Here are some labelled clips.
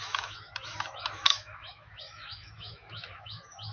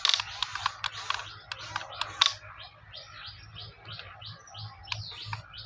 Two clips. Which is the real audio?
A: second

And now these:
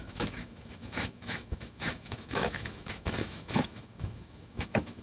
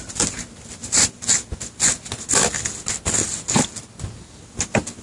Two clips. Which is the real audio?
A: second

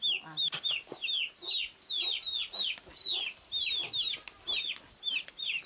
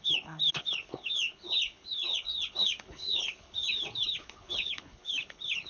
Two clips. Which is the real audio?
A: first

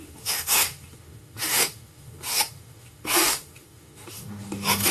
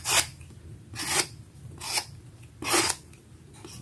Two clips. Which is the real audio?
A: second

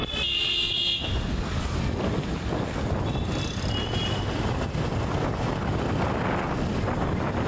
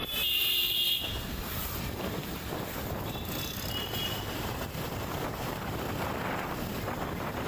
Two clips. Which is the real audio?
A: first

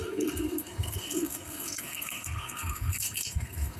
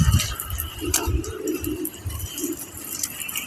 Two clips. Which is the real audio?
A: second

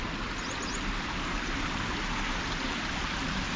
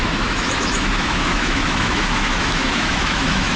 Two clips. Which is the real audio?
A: first